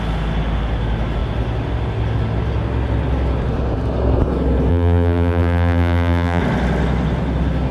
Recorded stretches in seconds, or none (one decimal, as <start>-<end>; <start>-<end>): 0.0-4.7; 6.4-7.7